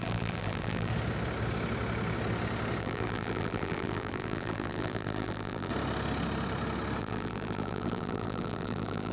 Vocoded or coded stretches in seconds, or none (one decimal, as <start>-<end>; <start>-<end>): 0.0-0.9; 2.8-5.7; 7.0-9.1